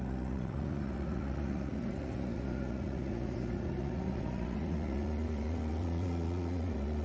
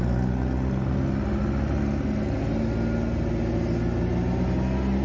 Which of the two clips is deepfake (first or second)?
first